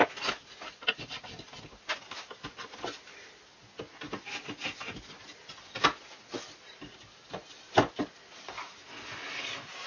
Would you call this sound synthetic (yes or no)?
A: no